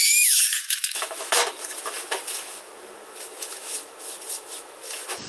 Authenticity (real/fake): fake